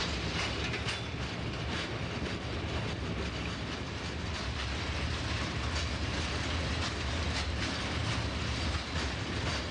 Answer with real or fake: real